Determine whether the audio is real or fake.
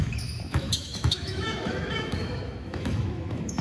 fake